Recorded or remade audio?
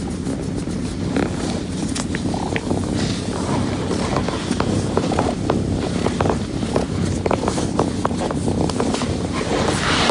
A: recorded